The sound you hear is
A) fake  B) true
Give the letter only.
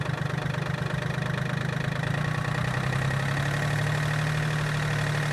B